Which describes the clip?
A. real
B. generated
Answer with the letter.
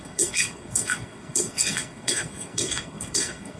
B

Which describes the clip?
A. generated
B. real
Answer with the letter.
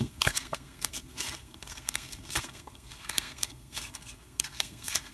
A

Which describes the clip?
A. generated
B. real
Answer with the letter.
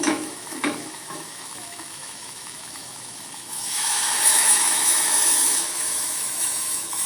A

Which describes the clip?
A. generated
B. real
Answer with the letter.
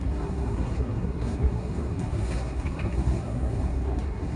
A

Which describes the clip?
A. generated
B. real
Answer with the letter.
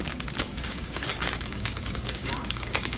A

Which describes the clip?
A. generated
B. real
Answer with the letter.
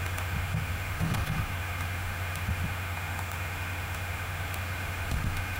A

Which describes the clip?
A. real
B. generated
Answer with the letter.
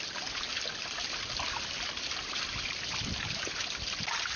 A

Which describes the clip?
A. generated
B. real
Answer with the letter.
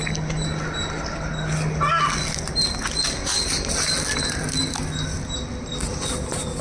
B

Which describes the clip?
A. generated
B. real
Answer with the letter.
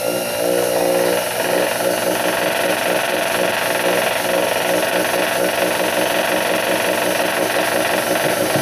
B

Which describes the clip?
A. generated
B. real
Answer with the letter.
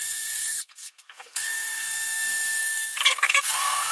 A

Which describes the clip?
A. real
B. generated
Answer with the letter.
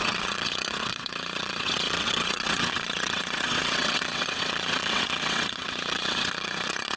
B